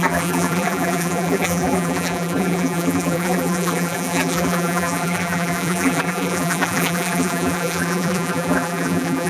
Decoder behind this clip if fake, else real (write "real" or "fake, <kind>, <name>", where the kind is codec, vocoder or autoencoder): fake, vocoder, BigVGAN v2